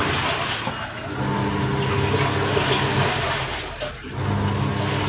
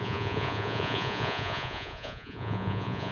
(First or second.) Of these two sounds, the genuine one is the first